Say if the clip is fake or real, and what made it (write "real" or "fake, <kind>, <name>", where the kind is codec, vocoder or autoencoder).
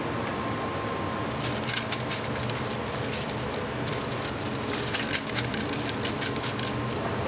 real